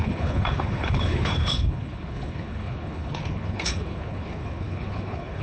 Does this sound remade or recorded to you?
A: remade